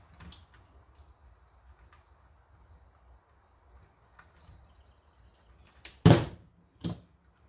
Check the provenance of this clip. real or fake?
real